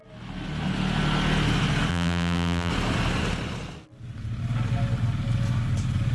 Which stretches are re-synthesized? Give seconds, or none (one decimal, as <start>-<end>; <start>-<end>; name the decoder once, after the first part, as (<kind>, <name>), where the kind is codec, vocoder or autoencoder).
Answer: 1.9-2.7 (vocoder, BigVGAN v2)